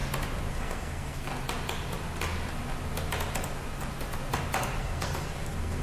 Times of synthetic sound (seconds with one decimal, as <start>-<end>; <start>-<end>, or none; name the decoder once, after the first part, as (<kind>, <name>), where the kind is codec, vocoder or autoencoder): 0.5-1.3 (codec, SNAC); 4.8-5.8